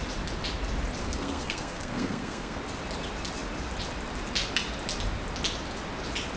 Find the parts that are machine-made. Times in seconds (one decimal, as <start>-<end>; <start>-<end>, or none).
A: 1.0-2.6